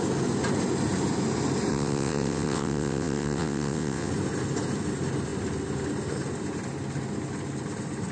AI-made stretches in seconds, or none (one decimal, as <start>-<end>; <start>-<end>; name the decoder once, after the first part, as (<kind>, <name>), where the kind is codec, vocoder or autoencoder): 1.7-4.1 (vocoder, WaveNeXt)